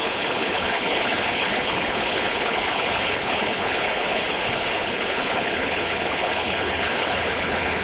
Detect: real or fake fake